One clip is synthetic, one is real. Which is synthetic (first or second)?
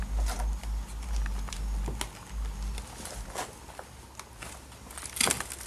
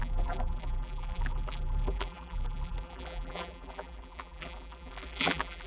second